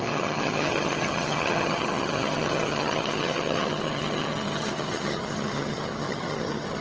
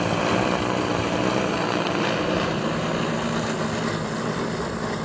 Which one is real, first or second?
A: second